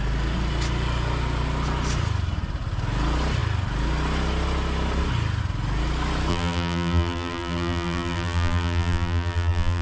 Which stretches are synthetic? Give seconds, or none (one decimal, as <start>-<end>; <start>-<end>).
6.3-9.8